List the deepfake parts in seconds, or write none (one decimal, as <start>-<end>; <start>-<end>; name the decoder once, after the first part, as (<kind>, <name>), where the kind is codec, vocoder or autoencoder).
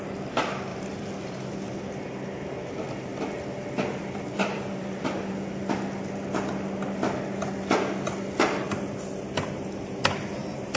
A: 0.7-1.5 (vocoder, BigVGAN v2); 3.1-5.3